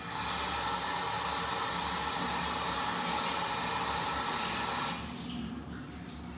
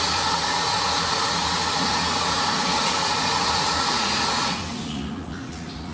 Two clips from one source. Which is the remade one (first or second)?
second